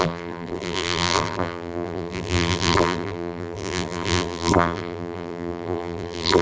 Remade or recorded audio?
remade